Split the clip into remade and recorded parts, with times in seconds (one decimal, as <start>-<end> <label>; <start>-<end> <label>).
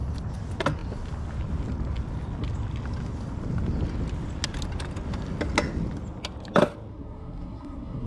0.0-6.9 recorded; 6.9-8.1 remade